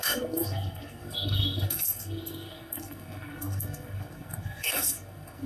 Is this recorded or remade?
remade